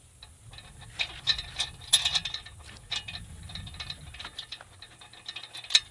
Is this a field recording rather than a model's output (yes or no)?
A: yes